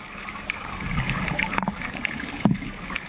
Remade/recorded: remade